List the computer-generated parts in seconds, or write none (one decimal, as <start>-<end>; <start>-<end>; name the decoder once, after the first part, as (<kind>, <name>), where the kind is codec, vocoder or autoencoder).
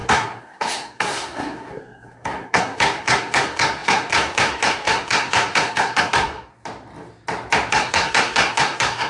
0.0-6.5 (codec, SNAC); 7.7-9.1